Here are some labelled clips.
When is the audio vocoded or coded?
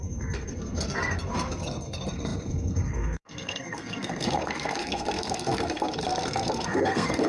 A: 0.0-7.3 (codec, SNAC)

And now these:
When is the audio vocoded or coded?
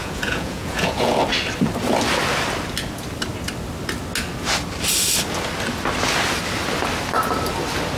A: 0.0-1.2 (vocoder, Vocos)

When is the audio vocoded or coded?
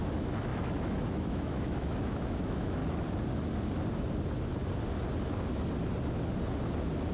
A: 0.0-2.8 (autoencoder, DAC-VAE)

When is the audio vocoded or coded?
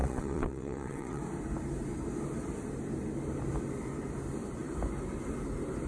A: 0.0-1.2 (vocoder, WaveNeXt)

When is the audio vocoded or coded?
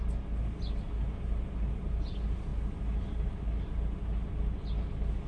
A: none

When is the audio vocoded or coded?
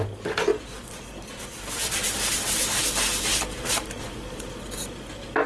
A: 0.5-2.8 (vocoder, BigVGAN v2); 3.3-4.6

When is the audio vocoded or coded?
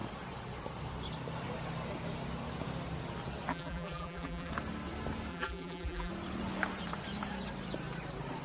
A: 3.5-4.5 (vocoder, BigVGAN v2); 5.3-6.1